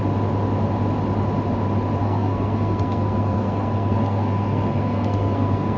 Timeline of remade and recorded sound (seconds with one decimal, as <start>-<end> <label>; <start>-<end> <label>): 0.0-2.0 recorded; 2.0-5.8 remade